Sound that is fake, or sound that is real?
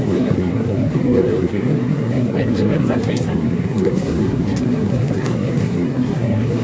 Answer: fake